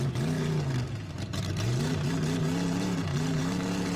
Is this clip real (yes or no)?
no